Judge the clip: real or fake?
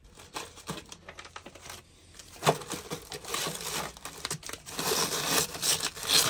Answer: real